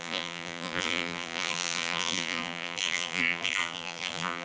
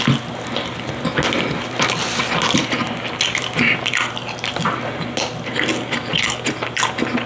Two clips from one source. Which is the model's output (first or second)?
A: first